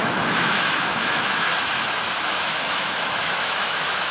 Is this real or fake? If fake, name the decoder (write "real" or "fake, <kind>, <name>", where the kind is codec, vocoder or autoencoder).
fake, autoencoder, DAC-VAE